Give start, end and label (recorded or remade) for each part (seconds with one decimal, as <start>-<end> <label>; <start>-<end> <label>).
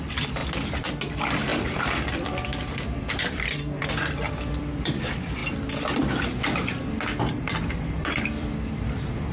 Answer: 0.0-5.4 remade; 5.4-7.3 recorded; 7.3-9.3 remade